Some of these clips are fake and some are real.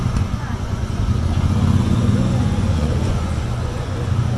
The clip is fake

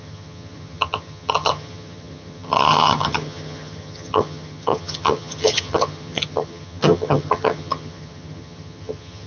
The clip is fake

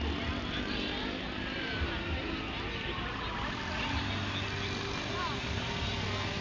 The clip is real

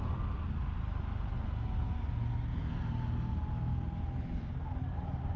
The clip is real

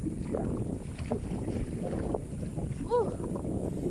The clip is real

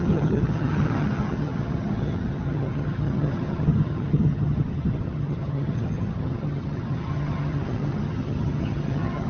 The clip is fake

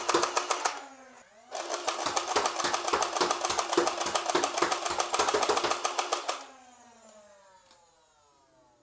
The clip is real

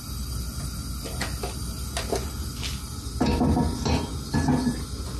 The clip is real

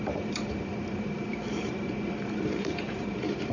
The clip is fake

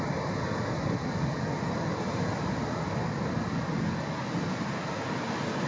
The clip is real